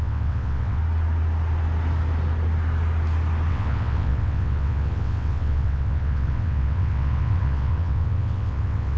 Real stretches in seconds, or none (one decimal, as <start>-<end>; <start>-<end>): 0.8-3.5